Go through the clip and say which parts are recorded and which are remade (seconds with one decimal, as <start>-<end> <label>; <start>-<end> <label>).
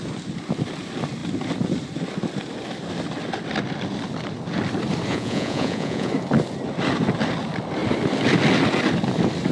0.0-5.1 recorded; 5.1-6.1 remade; 6.1-9.5 recorded